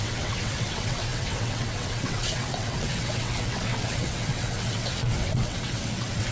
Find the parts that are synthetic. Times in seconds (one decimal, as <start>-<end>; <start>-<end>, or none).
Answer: 0.0-6.3